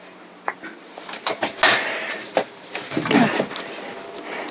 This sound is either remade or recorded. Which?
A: recorded